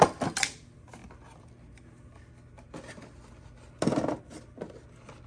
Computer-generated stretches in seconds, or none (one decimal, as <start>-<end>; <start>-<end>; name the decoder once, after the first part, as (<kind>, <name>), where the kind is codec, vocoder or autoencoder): none